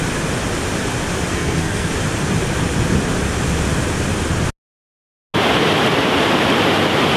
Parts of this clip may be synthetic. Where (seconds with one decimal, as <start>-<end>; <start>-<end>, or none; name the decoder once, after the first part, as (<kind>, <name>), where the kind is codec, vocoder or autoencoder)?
1.3-1.9 (codec, SNAC)